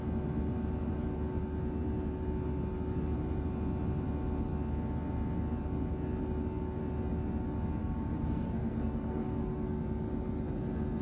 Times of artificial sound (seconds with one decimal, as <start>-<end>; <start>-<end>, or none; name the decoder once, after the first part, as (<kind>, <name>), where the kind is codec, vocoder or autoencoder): 7.8-9.8 (codec, SNAC)